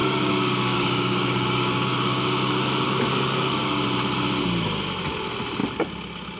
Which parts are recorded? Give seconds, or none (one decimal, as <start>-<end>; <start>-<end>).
3.8-6.4